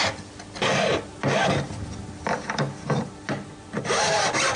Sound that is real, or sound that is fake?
fake